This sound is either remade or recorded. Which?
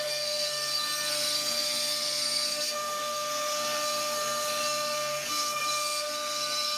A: remade